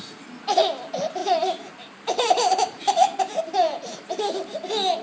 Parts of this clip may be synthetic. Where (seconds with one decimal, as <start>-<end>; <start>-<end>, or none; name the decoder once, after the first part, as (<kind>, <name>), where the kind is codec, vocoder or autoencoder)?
1.2-4.2 (vocoder, BigVGAN v2)